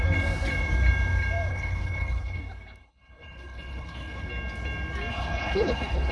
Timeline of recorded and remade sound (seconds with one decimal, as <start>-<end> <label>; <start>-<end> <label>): 0.0-1.5 recorded; 1.5-2.4 remade; 2.4-2.8 recorded; 2.8-4.3 remade; 4.3-5.1 recorded; 5.1-6.1 remade